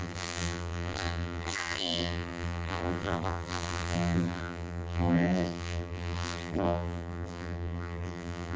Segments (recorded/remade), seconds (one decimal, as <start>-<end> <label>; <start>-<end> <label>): 0.0-8.6 remade